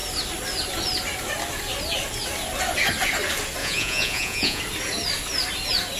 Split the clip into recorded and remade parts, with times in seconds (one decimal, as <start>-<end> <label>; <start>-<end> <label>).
0.0-3.6 recorded; 3.6-4.6 remade; 4.6-6.0 recorded